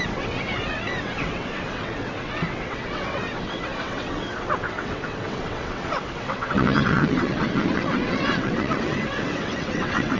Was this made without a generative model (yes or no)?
no